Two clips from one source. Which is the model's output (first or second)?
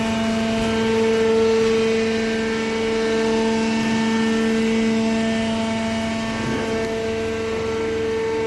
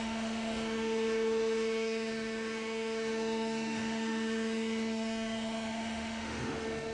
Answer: second